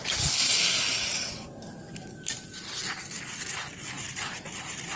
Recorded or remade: recorded